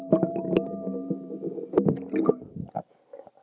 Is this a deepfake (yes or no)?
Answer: no